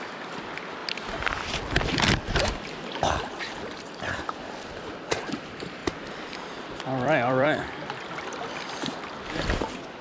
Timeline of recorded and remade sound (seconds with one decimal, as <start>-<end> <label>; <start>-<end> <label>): 0.0-5.8 recorded; 5.8-9.3 remade; 9.3-10.0 recorded